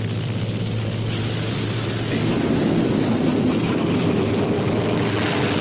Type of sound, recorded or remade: recorded